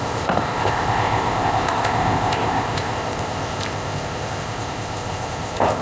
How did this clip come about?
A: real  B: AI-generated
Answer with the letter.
B